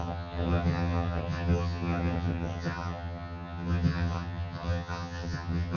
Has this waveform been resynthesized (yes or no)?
yes